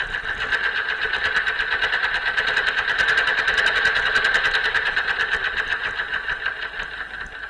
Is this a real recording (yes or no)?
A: yes